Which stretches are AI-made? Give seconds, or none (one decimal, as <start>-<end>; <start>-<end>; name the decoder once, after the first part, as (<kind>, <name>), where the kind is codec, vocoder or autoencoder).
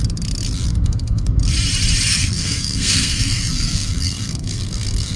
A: 0.7-1.4 (codec, SNAC); 2.1-5.2